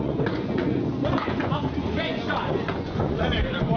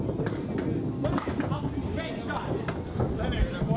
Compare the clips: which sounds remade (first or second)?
first